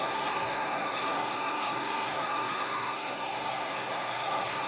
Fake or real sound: fake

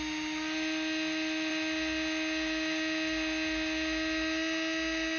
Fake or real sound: real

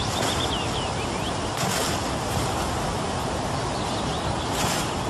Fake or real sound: real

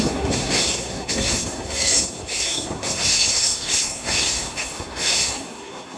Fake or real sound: fake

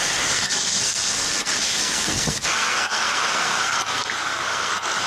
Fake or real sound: fake